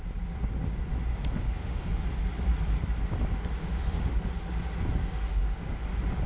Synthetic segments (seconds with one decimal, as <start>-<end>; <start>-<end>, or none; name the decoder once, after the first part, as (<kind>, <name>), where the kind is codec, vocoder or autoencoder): 1.1-2.0 (autoencoder, DAC-VAE); 3.6-4.3; 5.0-5.8